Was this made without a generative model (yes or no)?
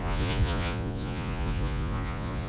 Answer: no